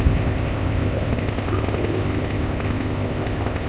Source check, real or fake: fake